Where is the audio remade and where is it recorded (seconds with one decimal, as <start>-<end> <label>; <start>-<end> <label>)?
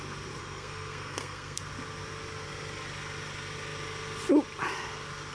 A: 0.0-0.4 recorded; 0.4-1.6 remade; 1.6-5.3 recorded